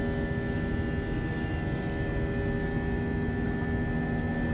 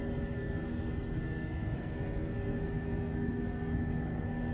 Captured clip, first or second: first